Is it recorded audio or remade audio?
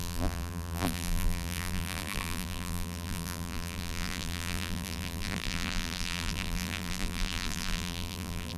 remade